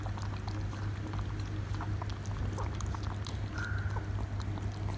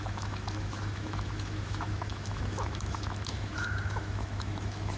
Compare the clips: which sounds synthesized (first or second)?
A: second